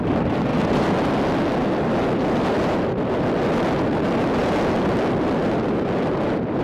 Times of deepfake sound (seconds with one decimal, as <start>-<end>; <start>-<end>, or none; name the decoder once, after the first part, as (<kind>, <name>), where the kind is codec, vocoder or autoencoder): none